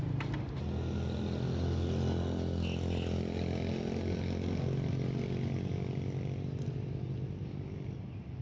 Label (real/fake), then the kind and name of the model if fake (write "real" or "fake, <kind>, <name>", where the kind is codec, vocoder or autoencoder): real